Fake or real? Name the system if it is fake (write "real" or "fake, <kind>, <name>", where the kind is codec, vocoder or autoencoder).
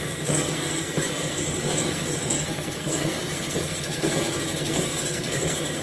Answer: fake, codec, SNAC